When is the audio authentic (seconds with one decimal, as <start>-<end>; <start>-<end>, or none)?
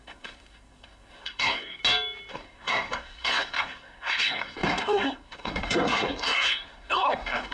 1.8-2.3